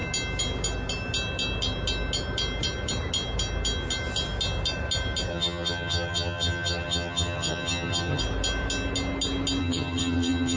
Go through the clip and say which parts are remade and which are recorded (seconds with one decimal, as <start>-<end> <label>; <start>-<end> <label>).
0.0-5.3 recorded; 5.3-8.2 remade; 8.2-9.6 recorded; 9.6-10.6 remade